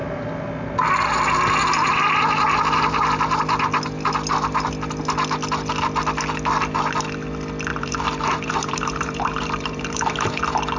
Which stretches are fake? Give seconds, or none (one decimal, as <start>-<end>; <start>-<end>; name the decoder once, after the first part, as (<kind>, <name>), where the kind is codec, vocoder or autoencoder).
7.7-10.4 (vocoder, BigVGAN v2)